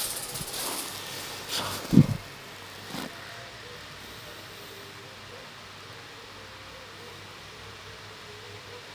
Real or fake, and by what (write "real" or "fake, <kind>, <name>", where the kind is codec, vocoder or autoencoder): real